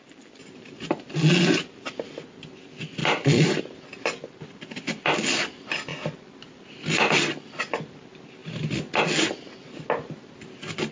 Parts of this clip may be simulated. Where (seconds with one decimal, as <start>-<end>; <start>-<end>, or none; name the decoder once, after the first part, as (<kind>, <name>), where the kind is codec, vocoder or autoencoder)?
3.0-3.6 (vocoder, BigVGAN v2)